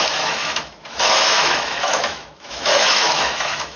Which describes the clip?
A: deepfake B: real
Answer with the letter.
A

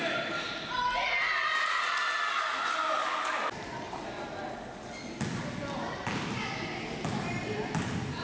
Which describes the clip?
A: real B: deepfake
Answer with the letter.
A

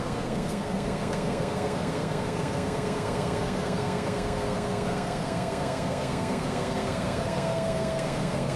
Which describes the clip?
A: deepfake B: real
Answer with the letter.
A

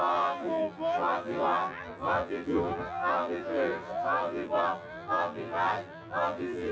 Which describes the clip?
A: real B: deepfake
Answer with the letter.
B